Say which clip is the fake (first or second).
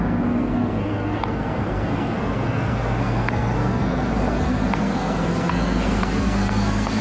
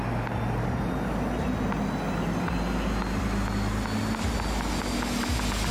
first